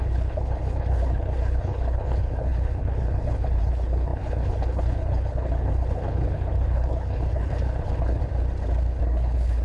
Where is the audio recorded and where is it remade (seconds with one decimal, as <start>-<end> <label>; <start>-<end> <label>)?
0.0-8.2 remade; 8.2-9.0 recorded; 9.0-9.6 remade